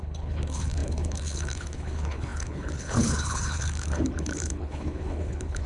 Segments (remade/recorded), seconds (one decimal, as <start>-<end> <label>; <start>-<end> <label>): 0.0-5.7 remade